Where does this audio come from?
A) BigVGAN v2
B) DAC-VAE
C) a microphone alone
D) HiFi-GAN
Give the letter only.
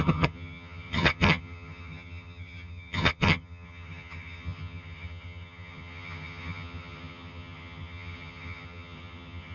D